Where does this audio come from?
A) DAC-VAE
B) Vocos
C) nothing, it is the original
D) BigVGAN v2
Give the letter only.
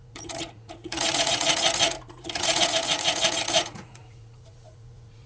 B